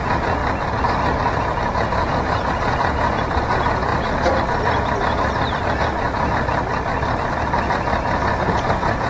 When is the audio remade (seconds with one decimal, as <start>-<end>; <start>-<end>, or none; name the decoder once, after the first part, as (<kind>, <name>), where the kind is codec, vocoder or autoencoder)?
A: 0.0-0.4 (vocoder, Vocos); 1.4-3.9; 8.4-9.1